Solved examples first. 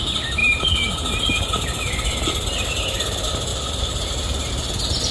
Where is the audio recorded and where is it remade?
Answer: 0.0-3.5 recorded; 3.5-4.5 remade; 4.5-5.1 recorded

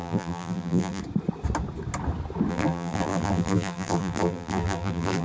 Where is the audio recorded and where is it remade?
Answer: 0.0-1.0 remade; 1.0-2.5 recorded; 2.5-5.2 remade

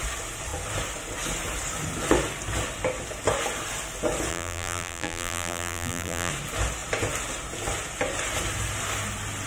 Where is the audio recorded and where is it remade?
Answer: 0.0-4.3 recorded; 4.3-6.3 remade; 6.3-9.5 recorded